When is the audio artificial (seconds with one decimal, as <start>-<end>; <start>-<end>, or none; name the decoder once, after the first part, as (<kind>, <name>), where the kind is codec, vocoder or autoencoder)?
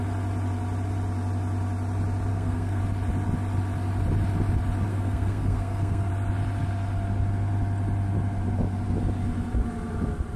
2.3-2.8 (codec, SNAC); 4.9-6.1